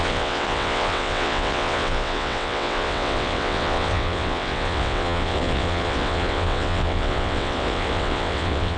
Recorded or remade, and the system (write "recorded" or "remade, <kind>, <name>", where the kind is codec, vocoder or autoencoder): remade, vocoder, WaveNeXt